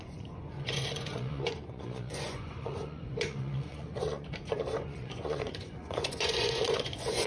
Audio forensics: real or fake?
fake